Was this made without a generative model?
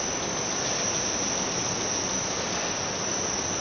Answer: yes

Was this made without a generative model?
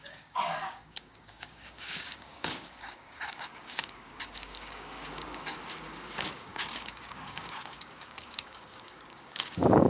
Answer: no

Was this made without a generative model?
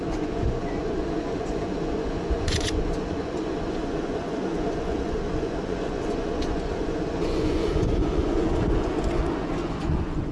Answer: no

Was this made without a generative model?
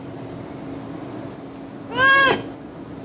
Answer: yes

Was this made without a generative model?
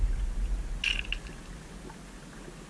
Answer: yes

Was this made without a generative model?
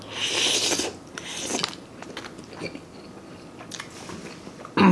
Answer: yes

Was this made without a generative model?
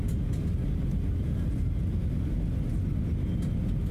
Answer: yes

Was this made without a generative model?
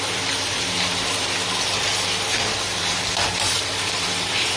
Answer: no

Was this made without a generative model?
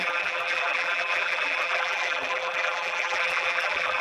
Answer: no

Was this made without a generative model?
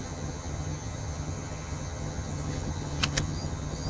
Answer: no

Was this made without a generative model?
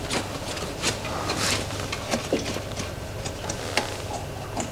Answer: yes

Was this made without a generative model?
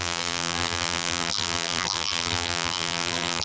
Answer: no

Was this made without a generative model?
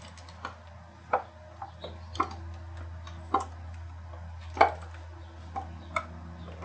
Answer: yes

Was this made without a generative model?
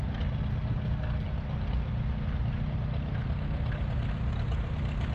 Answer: yes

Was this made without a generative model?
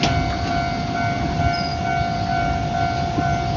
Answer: yes